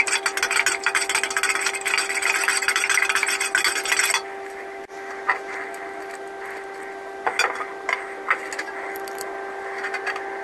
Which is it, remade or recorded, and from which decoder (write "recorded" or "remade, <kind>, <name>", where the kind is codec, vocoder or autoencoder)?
recorded